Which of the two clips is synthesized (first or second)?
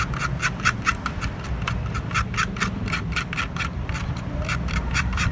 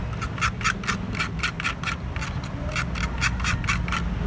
first